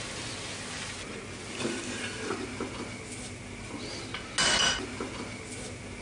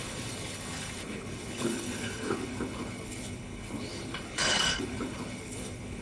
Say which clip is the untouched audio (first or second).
first